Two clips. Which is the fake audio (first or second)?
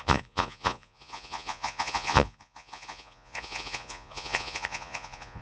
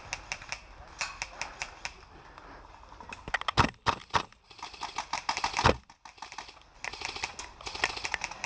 first